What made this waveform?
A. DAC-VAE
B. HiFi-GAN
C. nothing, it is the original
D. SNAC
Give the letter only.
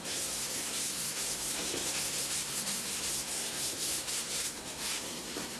D